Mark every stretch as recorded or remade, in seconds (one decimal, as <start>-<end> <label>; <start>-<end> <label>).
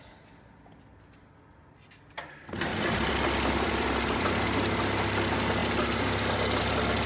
0.0-2.7 recorded; 2.7-4.6 remade; 4.6-7.1 recorded